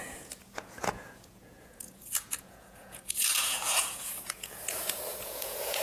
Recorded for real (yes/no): no